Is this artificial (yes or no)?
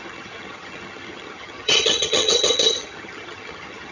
yes